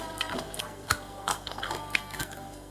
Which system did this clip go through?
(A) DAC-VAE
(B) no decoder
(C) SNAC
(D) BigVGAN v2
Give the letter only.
C